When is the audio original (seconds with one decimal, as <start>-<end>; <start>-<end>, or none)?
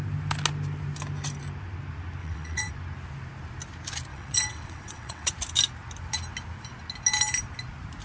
0.0-2.2; 2.7-4.1; 5.3-8.0